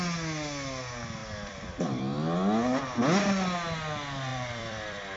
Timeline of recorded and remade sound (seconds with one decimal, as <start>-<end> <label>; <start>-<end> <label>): 0.0-1.2 recorded; 1.2-2.0 remade; 2.0-4.3 recorded; 4.3-5.2 remade